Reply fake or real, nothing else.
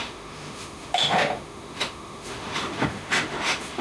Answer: fake